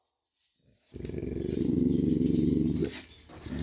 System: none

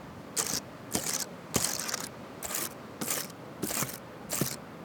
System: none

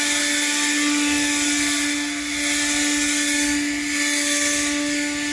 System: none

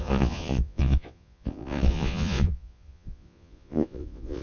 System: vocoder, Vocos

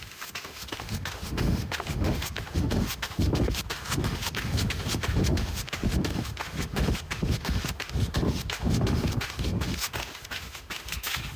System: autoencoder, DAC-VAE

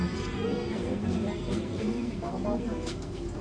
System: codec, SNAC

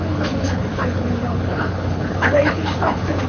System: codec, HILCodec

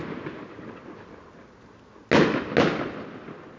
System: none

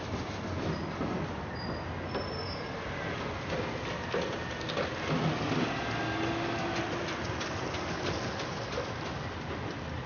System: none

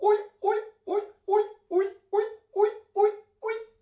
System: none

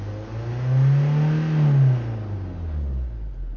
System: none